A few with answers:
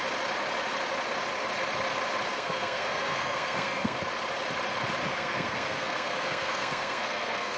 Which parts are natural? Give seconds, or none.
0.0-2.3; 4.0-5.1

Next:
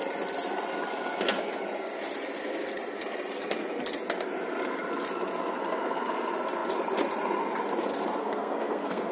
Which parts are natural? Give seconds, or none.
0.0-8.2

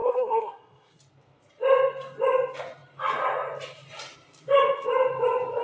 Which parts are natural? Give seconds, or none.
1.0-5.6